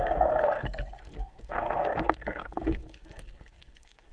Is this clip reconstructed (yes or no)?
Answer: yes